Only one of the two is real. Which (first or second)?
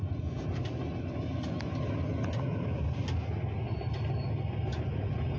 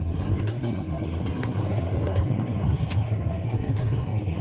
first